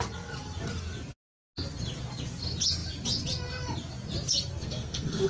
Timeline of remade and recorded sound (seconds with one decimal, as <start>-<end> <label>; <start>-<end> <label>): 0.0-4.6 recorded; 4.6-5.3 remade